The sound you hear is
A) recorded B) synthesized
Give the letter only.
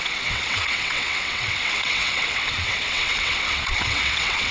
B